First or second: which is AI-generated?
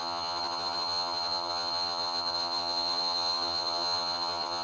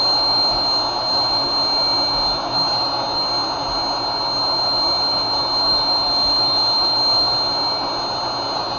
first